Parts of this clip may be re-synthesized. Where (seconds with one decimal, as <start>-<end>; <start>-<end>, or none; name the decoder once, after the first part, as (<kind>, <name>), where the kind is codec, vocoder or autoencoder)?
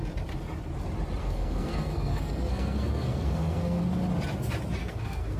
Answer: 1.2-3.8 (codec, SNAC); 4.8-5.4